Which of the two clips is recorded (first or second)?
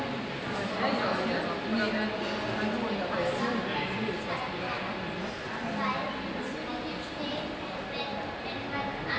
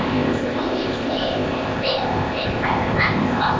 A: first